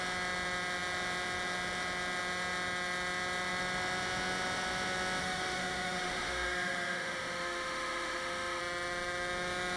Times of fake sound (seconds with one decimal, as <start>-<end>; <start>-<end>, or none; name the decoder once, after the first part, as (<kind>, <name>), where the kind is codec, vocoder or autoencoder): 5.2-8.6 (autoencoder, DAC-VAE)